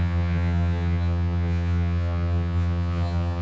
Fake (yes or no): yes